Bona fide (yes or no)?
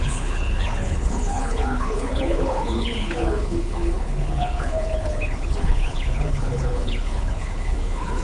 no